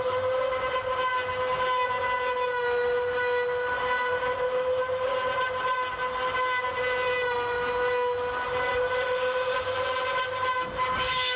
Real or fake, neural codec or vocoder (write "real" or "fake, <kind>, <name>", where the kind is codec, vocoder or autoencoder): real